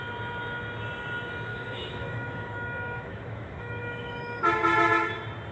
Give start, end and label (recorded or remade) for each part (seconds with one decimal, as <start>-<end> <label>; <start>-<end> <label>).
0.0-1.5 recorded; 1.5-4.4 remade; 4.4-5.5 recorded